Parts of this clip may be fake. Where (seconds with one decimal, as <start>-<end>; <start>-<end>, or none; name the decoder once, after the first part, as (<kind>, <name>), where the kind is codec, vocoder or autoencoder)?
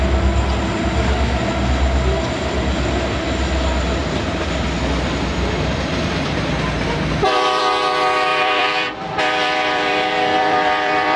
4.0-7.6 (vocoder, BigVGAN v2); 8.3-11.2